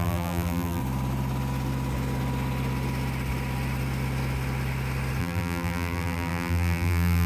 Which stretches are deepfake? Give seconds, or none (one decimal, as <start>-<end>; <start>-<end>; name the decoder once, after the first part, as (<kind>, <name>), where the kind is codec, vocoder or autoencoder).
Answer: 0.0-0.8 (vocoder, BigVGAN v2); 5.2-7.3